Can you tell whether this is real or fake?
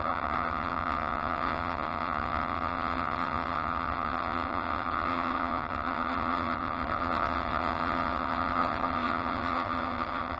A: fake